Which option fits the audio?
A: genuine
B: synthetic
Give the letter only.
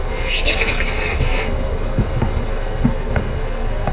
B